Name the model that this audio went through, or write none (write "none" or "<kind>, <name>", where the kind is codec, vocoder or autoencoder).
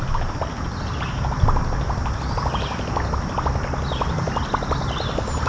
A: none